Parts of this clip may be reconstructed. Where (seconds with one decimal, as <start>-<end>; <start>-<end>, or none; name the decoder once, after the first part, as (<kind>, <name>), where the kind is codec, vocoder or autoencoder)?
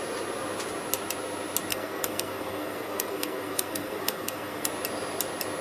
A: 1.7-4.7 (codec, SNAC)